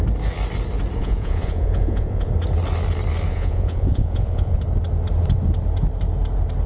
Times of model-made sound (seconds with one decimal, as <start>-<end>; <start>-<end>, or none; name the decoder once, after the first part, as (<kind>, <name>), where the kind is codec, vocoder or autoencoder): 1.0-2.3 (vocoder, Vocos); 3.3-4.6